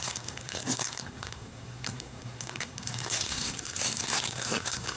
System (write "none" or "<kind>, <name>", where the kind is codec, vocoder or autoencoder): codec, SNAC